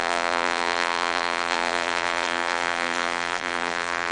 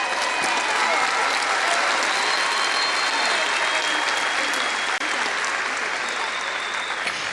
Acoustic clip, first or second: second